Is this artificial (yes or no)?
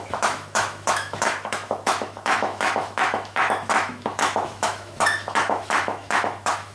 yes